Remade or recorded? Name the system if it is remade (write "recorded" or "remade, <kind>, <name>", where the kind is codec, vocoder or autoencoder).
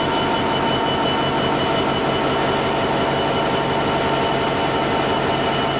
recorded